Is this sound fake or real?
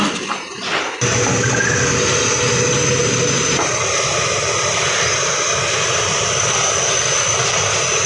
real